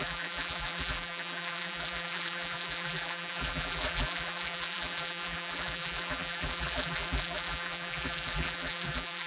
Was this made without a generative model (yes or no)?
no